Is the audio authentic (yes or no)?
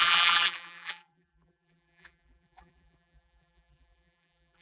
no